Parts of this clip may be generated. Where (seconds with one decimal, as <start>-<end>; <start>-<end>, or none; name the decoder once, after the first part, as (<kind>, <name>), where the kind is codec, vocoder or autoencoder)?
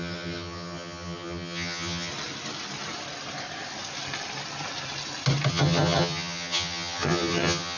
0.0-2.1 (vocoder, HiFi-GAN); 5.5-7.8